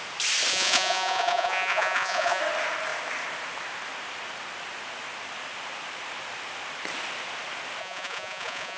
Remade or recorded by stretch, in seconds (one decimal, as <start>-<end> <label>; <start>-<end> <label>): 0.0-0.5 recorded; 0.5-2.4 remade; 2.4-7.8 recorded; 7.8-8.8 remade